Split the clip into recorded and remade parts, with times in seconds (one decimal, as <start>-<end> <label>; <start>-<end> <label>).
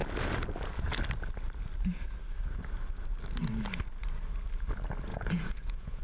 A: 0.0-5.1 recorded; 5.1-6.0 remade